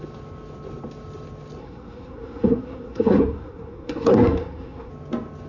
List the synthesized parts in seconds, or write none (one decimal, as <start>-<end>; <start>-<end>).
1.6-4.9